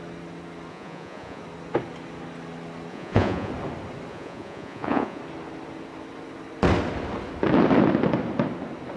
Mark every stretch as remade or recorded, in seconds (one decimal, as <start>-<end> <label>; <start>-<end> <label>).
0.0-0.7 recorded; 0.7-1.4 remade; 1.4-2.9 recorded; 2.9-3.5 remade; 3.5-4.1 recorded; 4.1-5.2 remade; 5.2-9.0 recorded